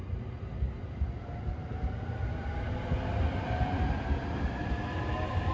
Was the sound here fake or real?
real